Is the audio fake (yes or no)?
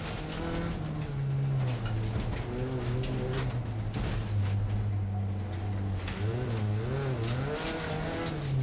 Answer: no